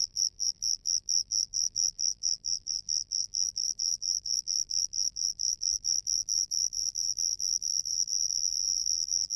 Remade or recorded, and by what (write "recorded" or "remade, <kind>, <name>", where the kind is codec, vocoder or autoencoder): remade, vocoder, BigVGAN v2